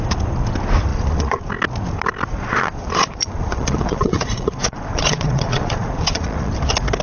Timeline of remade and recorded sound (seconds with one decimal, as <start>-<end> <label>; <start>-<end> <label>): 0.0-0.9 recorded; 0.9-1.5 remade; 1.5-2.3 recorded; 2.3-6.5 remade; 6.5-7.0 recorded